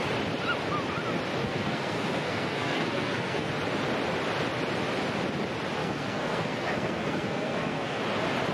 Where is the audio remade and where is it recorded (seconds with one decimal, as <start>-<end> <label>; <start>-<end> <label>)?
0.0-1.4 recorded; 1.4-3.5 remade; 3.5-5.8 recorded; 5.8-8.0 remade; 8.0-8.5 recorded